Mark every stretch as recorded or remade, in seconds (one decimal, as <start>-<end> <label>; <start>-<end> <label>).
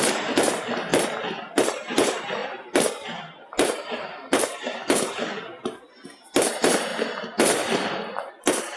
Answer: 0.0-0.9 remade; 0.9-1.4 recorded; 1.4-6.9 remade; 6.9-8.3 recorded; 8.3-8.8 remade